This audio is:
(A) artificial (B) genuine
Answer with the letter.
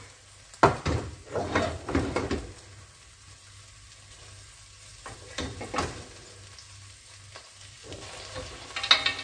B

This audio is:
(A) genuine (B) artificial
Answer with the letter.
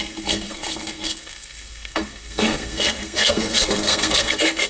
B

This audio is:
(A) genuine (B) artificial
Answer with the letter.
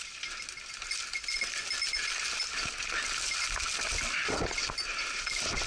A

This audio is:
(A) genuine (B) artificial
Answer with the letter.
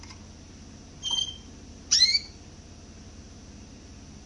A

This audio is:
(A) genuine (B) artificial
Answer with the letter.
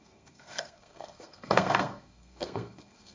B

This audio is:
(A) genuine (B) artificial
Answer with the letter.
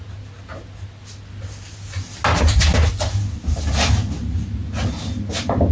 A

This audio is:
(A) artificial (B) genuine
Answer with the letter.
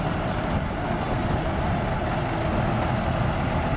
B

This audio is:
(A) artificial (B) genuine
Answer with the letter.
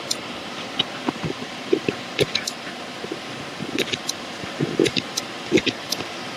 B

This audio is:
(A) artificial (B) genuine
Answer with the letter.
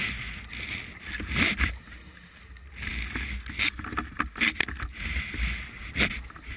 B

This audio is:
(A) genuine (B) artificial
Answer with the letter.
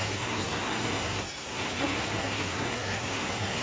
B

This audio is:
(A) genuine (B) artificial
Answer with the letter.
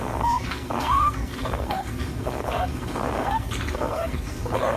B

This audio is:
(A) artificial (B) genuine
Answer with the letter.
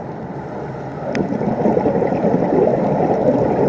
B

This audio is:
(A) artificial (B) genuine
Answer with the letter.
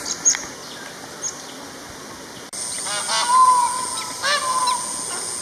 B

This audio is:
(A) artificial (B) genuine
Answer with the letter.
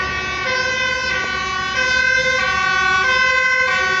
B